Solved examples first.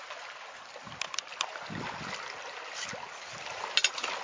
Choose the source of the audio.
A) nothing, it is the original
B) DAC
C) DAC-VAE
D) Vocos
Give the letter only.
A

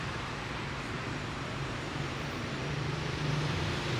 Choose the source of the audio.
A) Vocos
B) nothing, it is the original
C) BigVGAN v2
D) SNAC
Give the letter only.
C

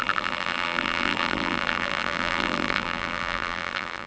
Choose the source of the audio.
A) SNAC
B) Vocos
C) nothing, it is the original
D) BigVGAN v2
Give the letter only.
D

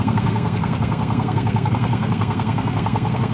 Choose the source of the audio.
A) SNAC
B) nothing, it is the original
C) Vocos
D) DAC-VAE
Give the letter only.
A